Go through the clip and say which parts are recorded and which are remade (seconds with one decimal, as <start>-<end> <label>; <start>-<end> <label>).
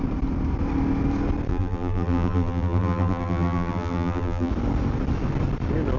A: 0.0-1.5 recorded; 1.5-4.5 remade; 4.5-6.0 recorded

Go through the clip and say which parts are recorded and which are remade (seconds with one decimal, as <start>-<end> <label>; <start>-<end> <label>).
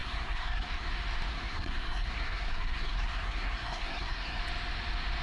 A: 0.0-0.9 remade; 0.9-1.3 recorded; 1.3-4.4 remade; 4.4-5.2 recorded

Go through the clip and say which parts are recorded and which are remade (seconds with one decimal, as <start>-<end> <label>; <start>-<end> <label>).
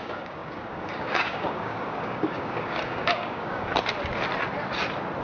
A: 0.0-3.7 remade; 3.7-5.2 recorded